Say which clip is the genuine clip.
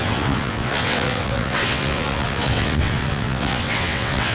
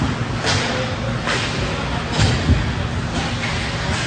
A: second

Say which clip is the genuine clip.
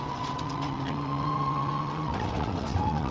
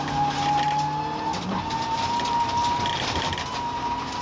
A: second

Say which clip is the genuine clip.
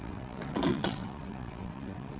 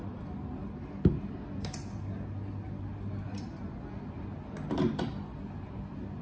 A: second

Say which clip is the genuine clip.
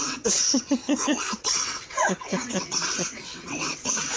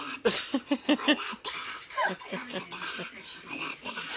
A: second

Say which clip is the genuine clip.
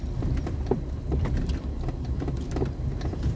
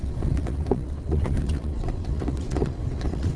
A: first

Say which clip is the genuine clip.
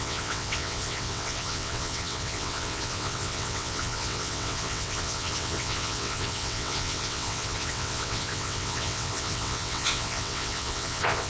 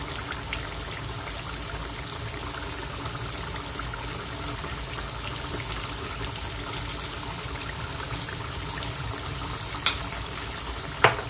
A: second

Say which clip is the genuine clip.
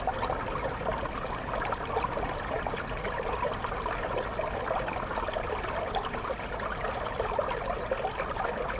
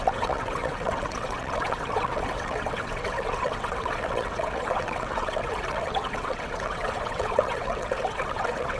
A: first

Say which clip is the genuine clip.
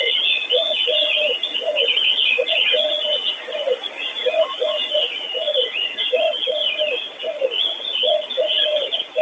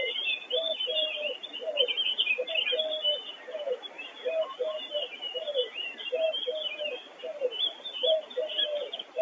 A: second